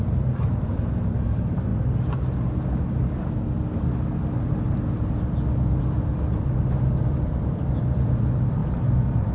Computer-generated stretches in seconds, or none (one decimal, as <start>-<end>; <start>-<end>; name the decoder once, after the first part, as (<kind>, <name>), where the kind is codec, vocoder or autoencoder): 0.0-1.7 (vocoder, BigVGAN v2); 5.8-9.3

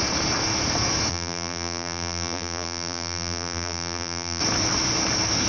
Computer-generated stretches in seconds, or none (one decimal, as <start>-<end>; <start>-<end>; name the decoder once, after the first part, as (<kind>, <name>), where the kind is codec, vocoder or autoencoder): 1.1-4.4 (vocoder, BigVGAN v2)